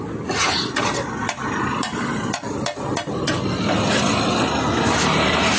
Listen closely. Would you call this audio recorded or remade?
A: recorded